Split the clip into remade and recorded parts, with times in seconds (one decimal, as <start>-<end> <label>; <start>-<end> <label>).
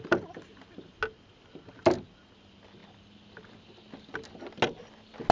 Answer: 0.0-5.3 recorded